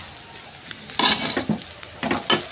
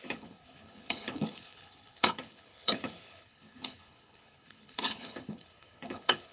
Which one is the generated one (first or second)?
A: second